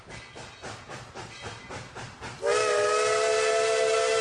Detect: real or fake real